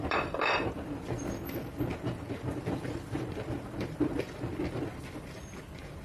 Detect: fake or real fake